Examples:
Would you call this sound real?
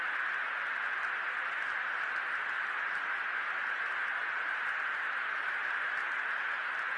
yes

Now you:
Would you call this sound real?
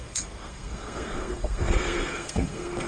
no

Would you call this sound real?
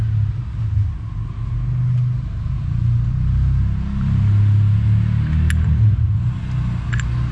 yes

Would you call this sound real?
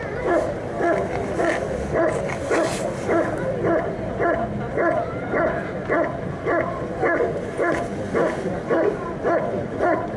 yes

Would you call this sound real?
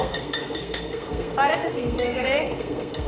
no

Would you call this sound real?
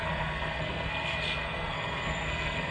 no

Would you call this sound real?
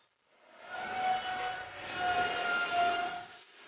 yes